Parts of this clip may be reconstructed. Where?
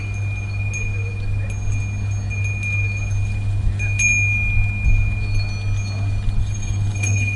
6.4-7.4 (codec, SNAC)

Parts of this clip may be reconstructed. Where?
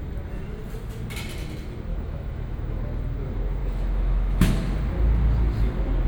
1.9-2.8 (autoencoder, DAC-VAE); 3.6-4.5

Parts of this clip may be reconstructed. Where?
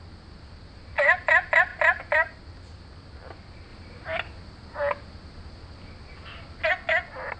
none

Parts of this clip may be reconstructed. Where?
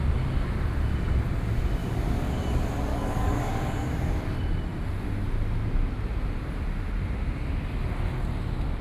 1.8-2.4 (codec, DAC); 2.9-3.5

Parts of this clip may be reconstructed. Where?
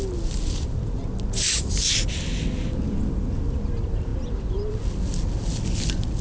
none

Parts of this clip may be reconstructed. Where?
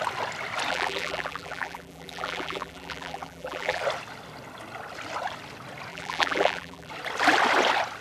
0.7-3.8 (vocoder, BigVGAN v2); 5.9-6.9